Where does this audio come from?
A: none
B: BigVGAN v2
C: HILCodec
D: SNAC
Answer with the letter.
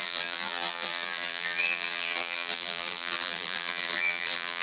B